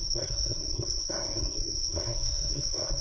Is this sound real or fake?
fake